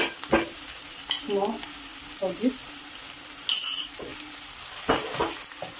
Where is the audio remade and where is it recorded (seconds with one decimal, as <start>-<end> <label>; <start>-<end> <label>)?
0.0-5.8 recorded